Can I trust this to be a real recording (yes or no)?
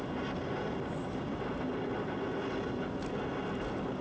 yes